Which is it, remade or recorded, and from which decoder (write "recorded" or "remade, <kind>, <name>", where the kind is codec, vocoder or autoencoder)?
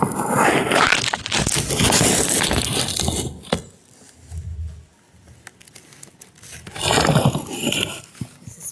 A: recorded